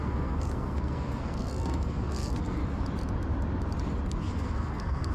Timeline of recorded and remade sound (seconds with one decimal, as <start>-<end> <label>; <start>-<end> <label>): 0.0-2.6 remade; 2.6-4.2 recorded; 4.2-5.1 remade